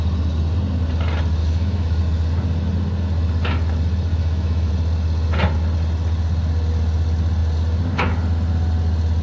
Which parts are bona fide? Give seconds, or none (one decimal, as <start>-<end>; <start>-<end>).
0.0-1.4; 2.0-4.1; 4.7-9.2